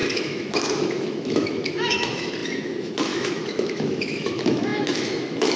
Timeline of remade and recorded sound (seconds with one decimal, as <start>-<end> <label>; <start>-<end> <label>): 0.0-5.6 remade